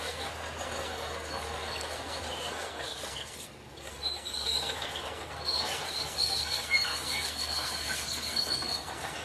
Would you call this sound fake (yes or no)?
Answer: yes